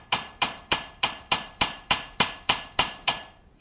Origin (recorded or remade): remade